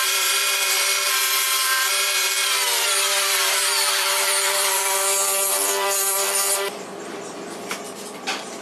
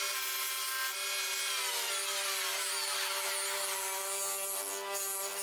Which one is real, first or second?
second